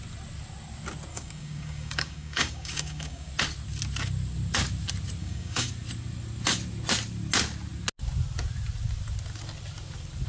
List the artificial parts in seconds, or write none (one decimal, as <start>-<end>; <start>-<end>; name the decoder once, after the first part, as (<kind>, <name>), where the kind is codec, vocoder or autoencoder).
1.1-3.3 (codec, DAC); 5.2-5.7